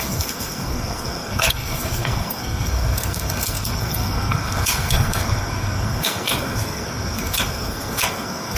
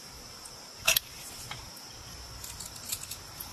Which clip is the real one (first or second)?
second